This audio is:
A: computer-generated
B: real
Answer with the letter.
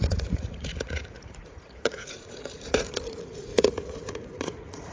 A